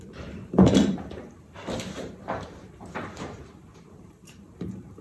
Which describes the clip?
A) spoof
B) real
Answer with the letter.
A